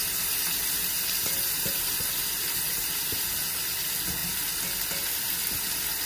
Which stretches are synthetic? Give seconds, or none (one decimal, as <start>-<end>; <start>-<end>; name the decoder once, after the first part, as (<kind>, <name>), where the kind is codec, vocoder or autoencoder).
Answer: none